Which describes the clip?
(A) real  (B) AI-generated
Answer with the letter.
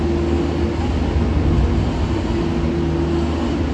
A